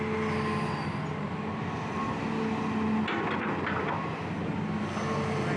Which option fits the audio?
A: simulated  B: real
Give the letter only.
B